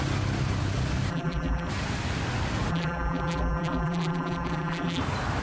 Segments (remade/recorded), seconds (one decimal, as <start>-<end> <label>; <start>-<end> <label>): 0.0-1.1 recorded; 1.1-1.7 remade; 1.7-2.7 recorded; 2.7-5.0 remade; 5.0-5.4 recorded